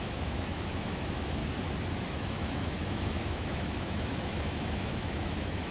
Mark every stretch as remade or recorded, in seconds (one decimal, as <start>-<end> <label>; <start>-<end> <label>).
0.0-1.4 remade; 1.4-1.9 recorded; 1.9-5.7 remade